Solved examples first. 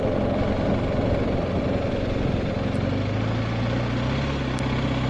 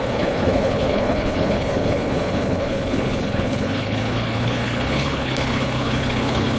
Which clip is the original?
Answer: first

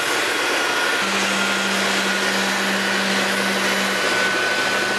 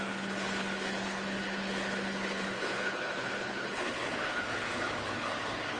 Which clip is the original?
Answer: first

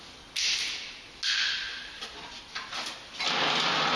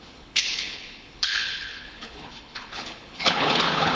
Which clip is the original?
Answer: first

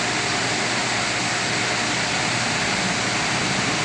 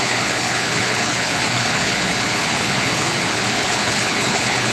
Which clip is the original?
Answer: first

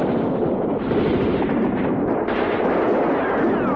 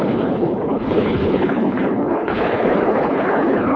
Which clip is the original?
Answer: first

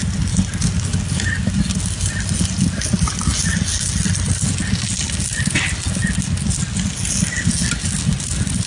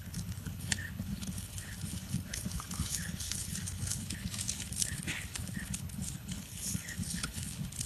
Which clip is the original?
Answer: first